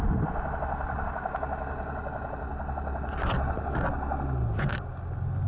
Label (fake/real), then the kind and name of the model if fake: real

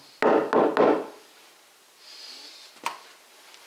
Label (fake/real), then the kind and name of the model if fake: real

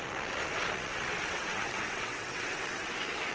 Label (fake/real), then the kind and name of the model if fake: fake, vocoder, WaveNeXt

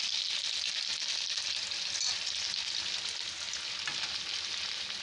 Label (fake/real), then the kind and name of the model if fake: real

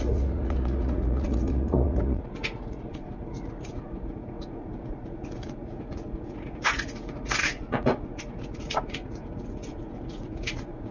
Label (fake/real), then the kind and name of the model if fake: fake, vocoder, Vocos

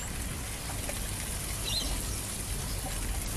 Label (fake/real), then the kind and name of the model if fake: real